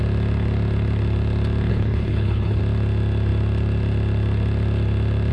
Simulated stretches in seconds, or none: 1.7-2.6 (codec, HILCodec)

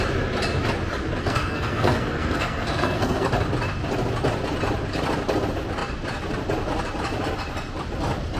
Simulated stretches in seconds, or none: 1.2-3.3 (codec, SNAC)

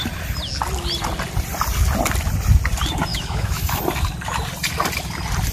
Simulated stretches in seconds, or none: 3.1-3.8 (autoencoder, DAC-VAE)

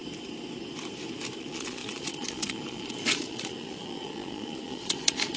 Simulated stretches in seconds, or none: 1.4-5.4 (vocoder, Vocos)

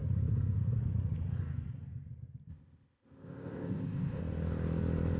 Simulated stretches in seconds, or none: 2.5-4.2 (codec, ZipCodec)

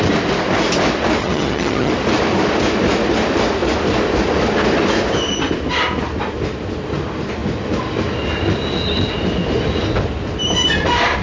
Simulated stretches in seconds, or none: 1.2-1.9 (vocoder, HiFi-GAN)